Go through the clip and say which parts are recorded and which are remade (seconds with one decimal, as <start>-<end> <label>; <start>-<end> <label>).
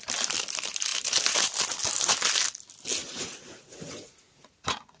0.0-3.0 recorded; 3.0-5.0 remade